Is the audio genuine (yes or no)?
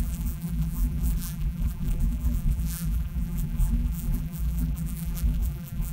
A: no